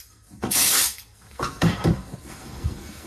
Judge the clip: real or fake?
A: fake